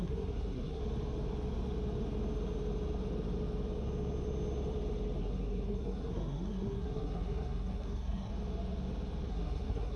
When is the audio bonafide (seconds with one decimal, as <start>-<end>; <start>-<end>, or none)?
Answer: 0.8-5.2; 8.3-9.3

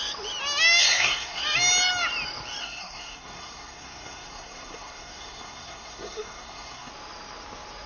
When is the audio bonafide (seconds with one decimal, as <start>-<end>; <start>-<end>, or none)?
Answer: 0.0-0.8; 1.4-2.6; 6.9-7.9

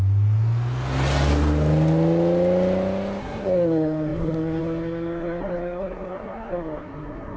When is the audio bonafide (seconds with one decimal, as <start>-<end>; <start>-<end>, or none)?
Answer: 0.0-3.2

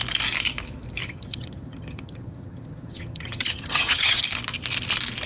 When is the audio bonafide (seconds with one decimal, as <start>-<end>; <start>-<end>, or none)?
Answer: 0.0-1.0; 4.2-5.3

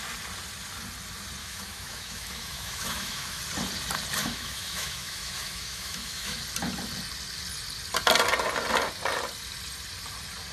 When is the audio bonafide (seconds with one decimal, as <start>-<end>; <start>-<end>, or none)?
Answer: 0.0-1.4; 3.4-4.2; 6.4-10.5

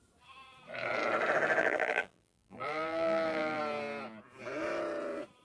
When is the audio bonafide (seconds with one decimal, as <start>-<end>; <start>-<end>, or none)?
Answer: 0.0-1.6; 3.6-5.4

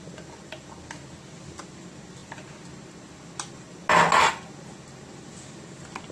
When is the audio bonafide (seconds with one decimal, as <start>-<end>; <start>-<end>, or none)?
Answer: 0.0-6.1